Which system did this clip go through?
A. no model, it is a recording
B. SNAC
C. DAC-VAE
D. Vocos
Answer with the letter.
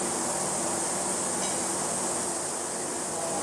A